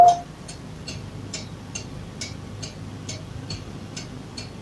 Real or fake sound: real